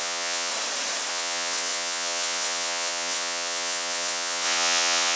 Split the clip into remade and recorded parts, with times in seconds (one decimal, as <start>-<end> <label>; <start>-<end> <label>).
0.0-0.5 remade; 0.5-1.1 recorded; 1.1-5.2 remade